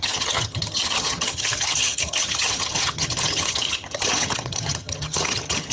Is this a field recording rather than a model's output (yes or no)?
no